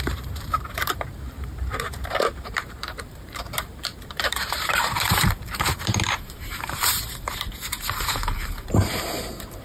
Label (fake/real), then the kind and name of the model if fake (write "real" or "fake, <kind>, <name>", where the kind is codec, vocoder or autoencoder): fake, vocoder, BigVGAN v2